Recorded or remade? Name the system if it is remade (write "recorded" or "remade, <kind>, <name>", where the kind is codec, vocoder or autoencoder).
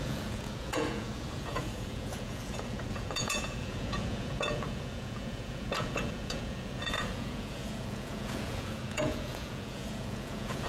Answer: remade, vocoder, Vocos